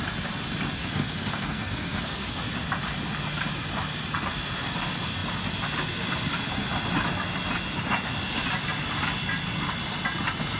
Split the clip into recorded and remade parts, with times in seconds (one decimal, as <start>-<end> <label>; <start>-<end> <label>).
0.0-0.8 recorded; 0.8-2.4 remade; 2.4-10.6 recorded